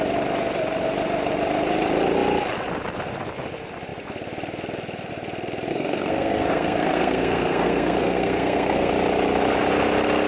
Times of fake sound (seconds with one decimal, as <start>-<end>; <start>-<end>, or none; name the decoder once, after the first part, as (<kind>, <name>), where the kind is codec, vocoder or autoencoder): 5.7-8.9 (codec, SNAC)

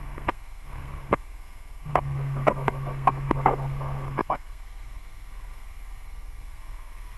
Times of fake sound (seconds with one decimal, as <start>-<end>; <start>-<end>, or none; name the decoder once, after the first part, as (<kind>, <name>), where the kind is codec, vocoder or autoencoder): 0.0-7.2 (codec, SNAC)